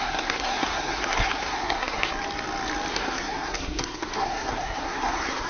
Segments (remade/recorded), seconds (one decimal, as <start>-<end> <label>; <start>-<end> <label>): 0.0-2.1 remade; 2.1-2.9 recorded; 2.9-5.5 remade